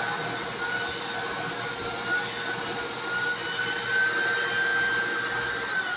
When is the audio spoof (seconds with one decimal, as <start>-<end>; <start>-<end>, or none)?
none